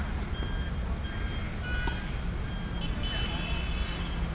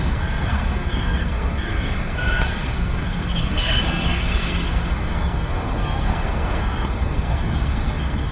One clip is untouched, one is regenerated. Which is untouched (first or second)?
first